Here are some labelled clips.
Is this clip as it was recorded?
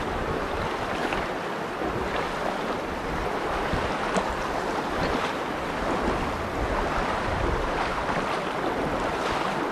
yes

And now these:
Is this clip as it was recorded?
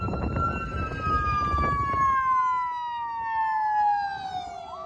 yes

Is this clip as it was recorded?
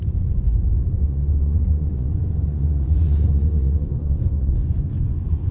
no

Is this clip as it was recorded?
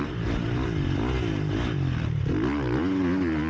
yes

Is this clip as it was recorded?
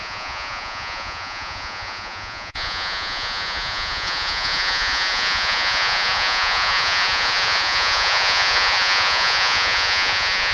no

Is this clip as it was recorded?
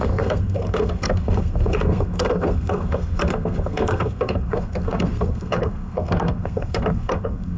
no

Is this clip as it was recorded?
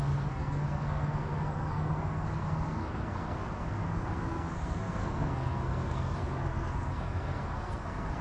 no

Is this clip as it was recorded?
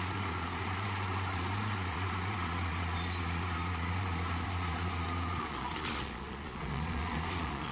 no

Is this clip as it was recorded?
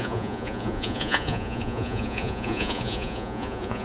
no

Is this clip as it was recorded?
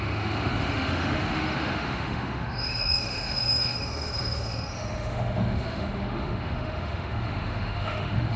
no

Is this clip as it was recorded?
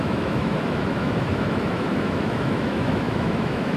no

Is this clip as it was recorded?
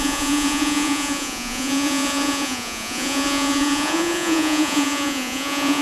no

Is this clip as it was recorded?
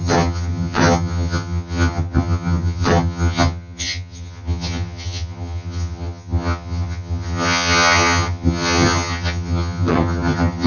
no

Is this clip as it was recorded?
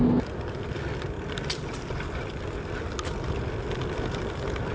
yes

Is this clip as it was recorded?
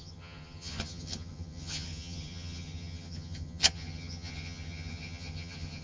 no